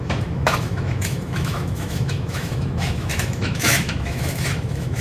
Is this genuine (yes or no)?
no